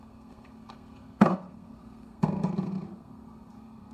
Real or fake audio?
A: fake